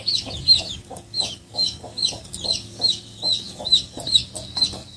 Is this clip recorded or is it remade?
remade